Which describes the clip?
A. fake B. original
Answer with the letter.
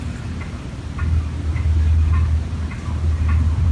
A